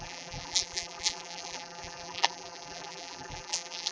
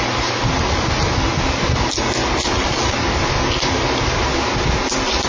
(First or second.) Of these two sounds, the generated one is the first